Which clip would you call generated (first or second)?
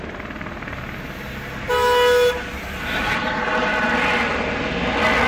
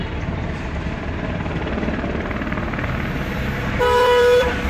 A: second